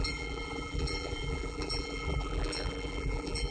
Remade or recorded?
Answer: remade